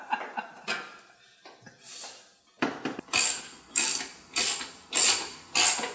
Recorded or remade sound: recorded